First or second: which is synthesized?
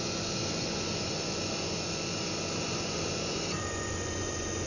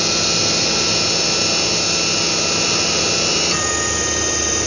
first